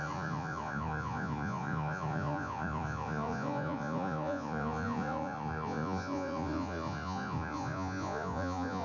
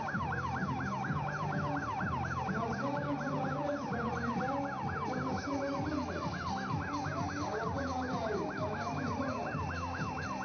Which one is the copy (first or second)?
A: first